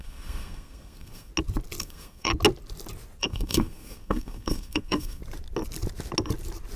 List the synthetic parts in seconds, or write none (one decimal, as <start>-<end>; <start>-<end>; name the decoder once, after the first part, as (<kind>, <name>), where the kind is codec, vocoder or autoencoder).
0.0-1.3 (codec, SNAC); 1.8-2.3; 3.2-5.2